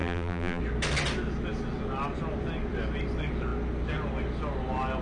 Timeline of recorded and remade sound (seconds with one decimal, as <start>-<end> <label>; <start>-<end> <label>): 0.0-0.6 remade; 0.6-5.0 recorded